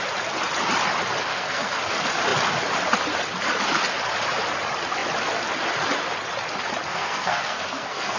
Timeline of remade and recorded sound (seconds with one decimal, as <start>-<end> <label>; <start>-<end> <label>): 0.0-1.3 recorded; 1.3-1.8 remade; 1.8-6.9 recorded; 6.9-8.2 remade